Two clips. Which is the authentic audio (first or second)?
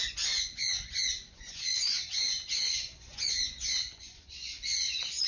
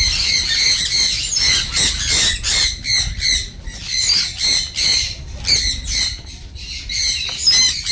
second